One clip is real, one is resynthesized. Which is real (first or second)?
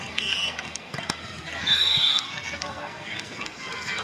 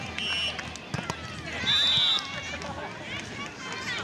second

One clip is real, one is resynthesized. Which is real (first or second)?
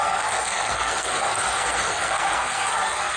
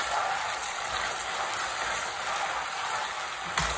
second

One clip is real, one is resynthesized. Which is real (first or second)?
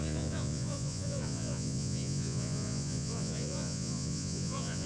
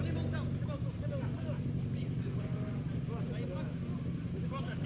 second